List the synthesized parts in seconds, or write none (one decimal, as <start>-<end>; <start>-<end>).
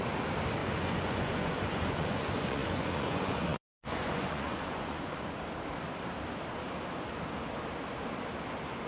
0.6-5.4